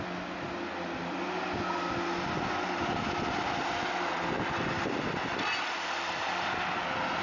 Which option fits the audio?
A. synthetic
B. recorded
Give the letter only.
B